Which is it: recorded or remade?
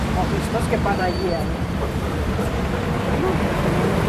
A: remade